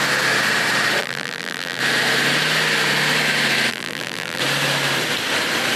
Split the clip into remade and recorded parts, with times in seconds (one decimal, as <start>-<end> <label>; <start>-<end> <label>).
0.0-1.0 recorded; 1.0-1.8 remade; 1.8-3.7 recorded; 3.7-4.4 remade; 4.4-5.8 recorded